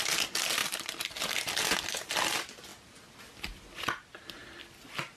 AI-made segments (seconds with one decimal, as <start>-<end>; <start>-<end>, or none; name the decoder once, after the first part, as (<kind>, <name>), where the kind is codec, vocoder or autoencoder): none